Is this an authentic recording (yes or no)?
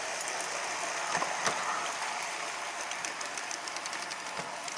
yes